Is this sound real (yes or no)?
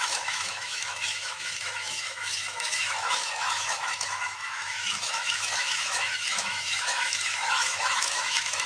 no